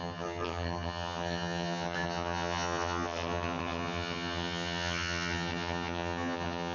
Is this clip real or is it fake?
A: fake